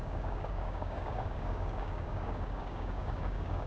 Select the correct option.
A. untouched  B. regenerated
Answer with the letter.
B